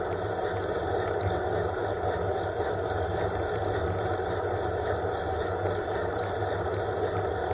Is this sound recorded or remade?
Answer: recorded